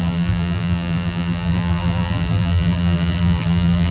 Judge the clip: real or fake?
fake